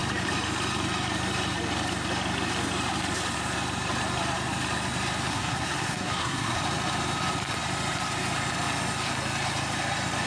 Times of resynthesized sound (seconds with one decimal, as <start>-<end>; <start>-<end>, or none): 5.3-6.6